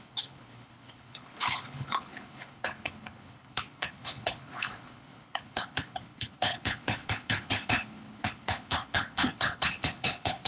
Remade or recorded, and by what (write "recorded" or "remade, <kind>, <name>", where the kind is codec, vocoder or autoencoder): remade, codec, HILCodec